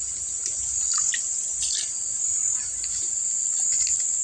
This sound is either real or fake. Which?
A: real